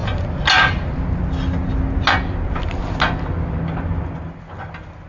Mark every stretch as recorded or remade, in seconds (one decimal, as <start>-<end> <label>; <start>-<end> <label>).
0.0-5.1 recorded